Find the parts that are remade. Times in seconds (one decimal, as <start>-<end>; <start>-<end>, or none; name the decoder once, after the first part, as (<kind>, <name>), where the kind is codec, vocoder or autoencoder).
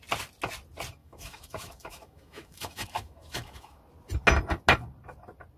1.0-3.8 (autoencoder, DAC-VAE)